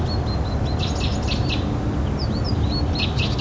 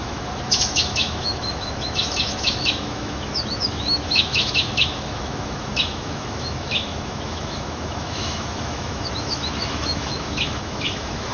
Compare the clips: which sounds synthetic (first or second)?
second